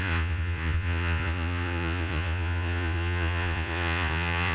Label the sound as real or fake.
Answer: fake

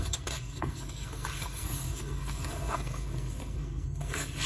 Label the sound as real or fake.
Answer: fake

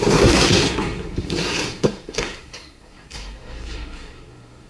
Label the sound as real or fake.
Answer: fake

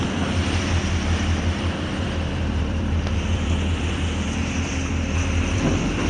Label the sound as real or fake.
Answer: fake